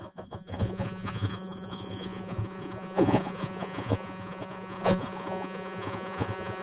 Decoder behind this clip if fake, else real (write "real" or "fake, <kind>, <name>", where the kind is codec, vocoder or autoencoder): fake, vocoder, Vocos